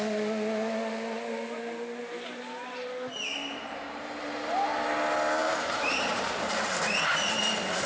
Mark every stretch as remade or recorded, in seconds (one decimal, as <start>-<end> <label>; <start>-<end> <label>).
0.0-3.4 recorded; 3.4-4.2 remade; 4.2-5.4 recorded; 5.4-6.4 remade; 6.4-7.9 recorded